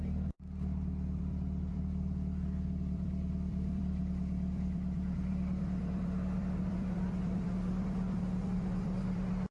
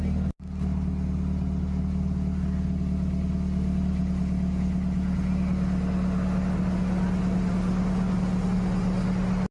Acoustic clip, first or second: second